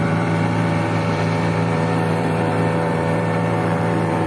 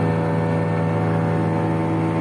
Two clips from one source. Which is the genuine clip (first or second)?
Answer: second